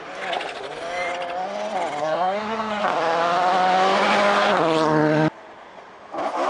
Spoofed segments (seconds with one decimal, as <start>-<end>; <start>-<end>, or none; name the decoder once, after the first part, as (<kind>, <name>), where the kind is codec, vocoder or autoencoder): 2.0-2.8 (codec, SNAC)